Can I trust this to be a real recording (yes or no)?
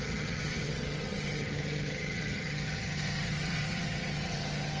no